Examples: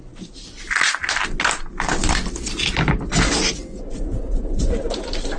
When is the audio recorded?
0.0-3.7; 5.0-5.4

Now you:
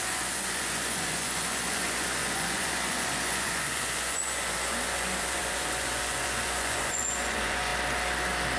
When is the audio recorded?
7.7-8.6

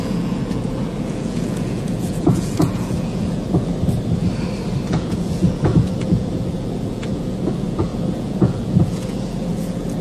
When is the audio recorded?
3.7-4.9

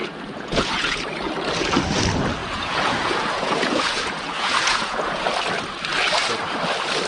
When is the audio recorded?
1.0-2.4; 5.3-7.1

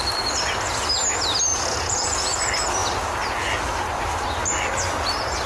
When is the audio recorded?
0.0-1.5; 2.4-5.5